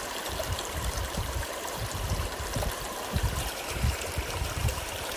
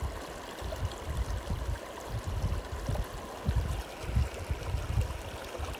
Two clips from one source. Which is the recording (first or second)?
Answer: second